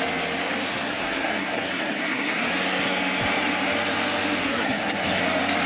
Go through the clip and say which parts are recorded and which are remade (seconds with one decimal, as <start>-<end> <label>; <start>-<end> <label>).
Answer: 0.0-0.9 recorded; 0.9-2.5 remade; 2.5-4.4 recorded; 4.4-5.2 remade; 5.2-5.7 recorded